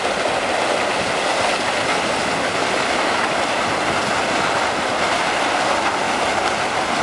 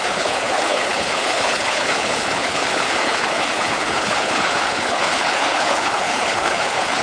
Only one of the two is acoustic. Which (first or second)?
first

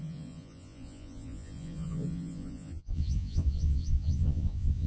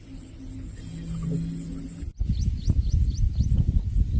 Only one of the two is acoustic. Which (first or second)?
second